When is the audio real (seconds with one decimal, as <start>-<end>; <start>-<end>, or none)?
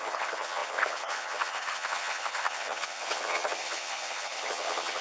none